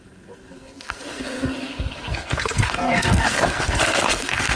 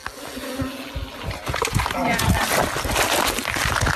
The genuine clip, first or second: second